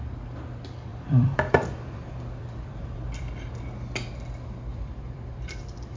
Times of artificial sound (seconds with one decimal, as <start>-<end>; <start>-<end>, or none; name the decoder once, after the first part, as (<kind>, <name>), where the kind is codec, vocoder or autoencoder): 0.9-3.6 (vocoder, BigVGAN v2); 4.7-6.0